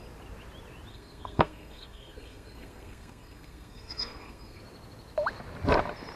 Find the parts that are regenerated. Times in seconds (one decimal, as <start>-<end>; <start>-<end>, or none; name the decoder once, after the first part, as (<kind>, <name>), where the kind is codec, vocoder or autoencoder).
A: 0.9-4.6 (codec, SNAC)